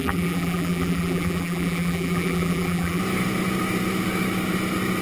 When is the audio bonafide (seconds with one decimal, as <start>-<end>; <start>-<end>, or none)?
3.0-5.0